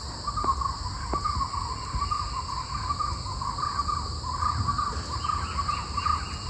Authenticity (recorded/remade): recorded